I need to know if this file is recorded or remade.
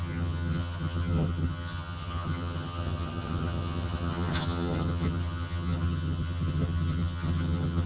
remade